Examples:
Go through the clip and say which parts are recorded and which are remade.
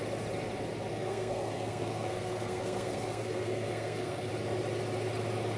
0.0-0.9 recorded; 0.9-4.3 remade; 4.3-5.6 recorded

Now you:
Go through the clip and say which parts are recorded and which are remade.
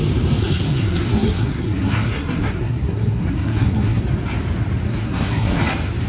0.0-0.4 recorded; 0.4-4.0 remade; 4.0-4.9 recorded; 4.9-5.6 remade; 5.6-6.1 recorded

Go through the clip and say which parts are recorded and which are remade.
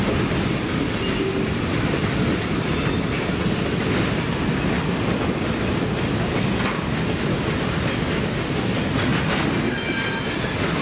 0.0-10.8 recorded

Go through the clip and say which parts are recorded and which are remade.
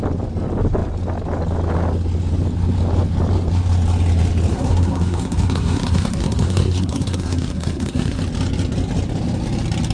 0.0-4.5 recorded; 4.5-8.2 remade; 8.2-9.9 recorded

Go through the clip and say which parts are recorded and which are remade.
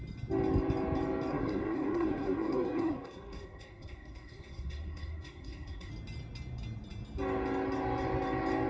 0.0-1.3 recorded; 1.3-5.9 remade; 5.9-8.7 recorded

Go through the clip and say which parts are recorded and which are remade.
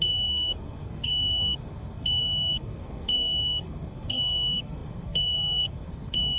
0.0-6.4 remade